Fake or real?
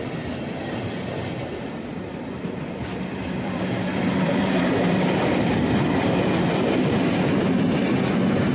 fake